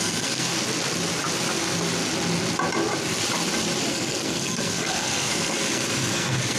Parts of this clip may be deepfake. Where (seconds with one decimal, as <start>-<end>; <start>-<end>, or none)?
0.0-0.5; 3.9-6.6